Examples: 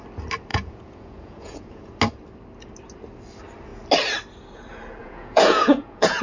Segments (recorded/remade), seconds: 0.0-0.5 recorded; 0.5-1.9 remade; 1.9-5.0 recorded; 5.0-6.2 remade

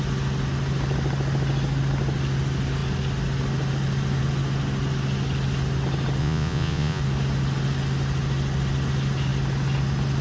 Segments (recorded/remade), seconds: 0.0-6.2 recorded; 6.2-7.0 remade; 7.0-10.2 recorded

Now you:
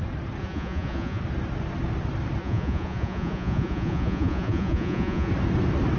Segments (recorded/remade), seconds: 0.0-0.4 recorded; 0.4-1.2 remade; 1.2-2.4 recorded; 2.4-5.3 remade; 5.3-6.0 recorded

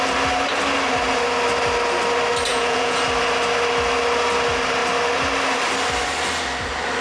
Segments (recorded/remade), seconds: 0.0-2.5 recorded; 2.5-3.0 remade; 3.0-7.0 recorded